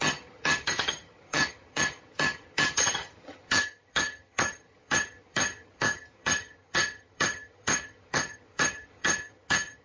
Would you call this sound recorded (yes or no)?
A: no